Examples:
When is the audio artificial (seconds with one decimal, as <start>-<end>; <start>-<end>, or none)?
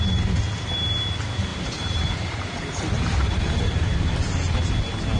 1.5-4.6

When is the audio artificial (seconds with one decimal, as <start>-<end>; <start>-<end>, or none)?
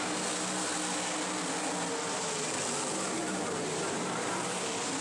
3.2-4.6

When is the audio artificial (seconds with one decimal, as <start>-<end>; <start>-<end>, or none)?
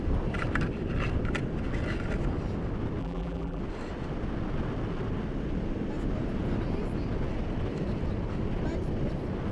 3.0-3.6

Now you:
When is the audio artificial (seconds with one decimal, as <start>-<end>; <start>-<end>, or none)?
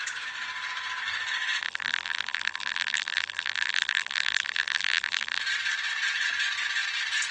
1.6-5.4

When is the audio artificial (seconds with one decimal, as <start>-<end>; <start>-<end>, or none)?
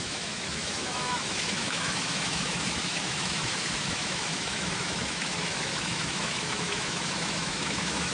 0.0-8.1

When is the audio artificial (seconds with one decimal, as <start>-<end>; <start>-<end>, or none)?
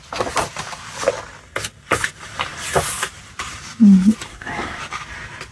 4.3-4.8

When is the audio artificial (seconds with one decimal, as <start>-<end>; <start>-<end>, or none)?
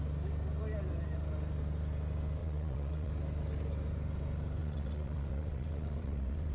2.4-3.1; 4.6-6.5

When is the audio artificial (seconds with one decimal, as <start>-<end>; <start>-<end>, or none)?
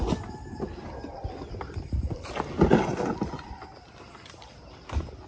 1.2-2.3; 2.9-4.6